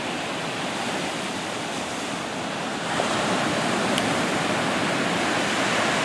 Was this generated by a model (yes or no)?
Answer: no